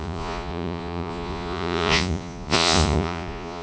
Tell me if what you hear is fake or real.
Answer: fake